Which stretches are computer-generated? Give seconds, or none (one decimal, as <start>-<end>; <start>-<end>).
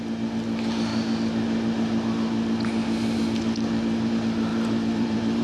4.5-5.4